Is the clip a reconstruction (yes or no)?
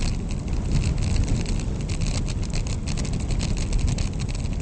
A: no